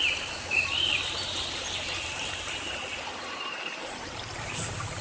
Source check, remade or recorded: remade